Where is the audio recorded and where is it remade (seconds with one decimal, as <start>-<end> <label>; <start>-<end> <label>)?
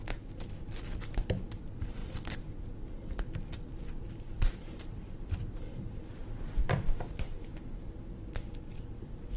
0.0-2.0 recorded; 2.0-5.6 remade; 5.6-9.4 recorded